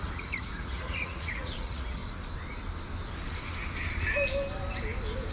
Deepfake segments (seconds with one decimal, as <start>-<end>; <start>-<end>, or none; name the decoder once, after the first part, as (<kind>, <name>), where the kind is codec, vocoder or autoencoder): 0.0-2.0 (vocoder, Vocos)